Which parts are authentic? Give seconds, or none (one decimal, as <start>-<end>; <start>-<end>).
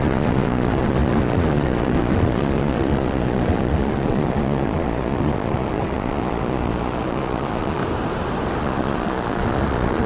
7.8-8.6